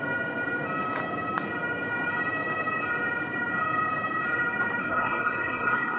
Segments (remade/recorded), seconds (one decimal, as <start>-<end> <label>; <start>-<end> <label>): 0.0-4.8 recorded; 4.8-6.0 remade